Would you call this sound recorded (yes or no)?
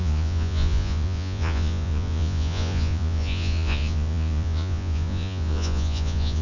no